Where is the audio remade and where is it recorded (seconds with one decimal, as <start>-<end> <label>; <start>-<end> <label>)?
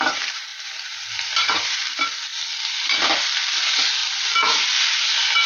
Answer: 0.0-2.3 remade; 2.3-3.6 recorded; 3.6-4.0 remade; 4.0-4.9 recorded; 4.9-5.5 remade